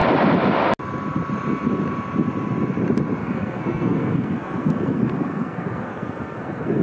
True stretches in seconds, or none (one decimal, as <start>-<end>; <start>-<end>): 0.0-3.2